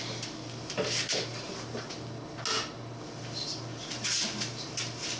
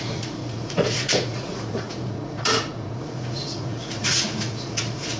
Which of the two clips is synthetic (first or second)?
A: second